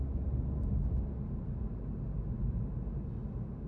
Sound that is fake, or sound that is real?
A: real